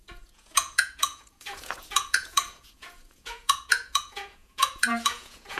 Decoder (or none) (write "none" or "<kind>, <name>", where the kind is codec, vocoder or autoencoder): vocoder, Vocos